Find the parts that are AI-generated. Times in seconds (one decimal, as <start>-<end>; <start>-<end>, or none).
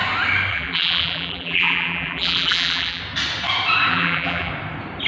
0.5-3.0; 3.9-4.5